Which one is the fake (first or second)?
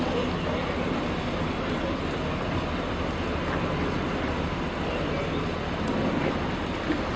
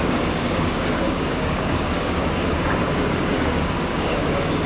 second